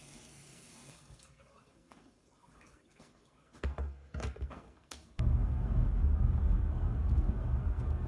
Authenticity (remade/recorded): remade